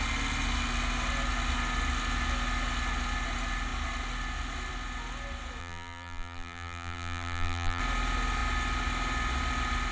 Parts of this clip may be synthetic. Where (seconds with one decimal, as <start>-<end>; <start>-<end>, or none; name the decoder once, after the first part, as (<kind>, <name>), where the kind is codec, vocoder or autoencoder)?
5.6-7.8 (vocoder, BigVGAN v2)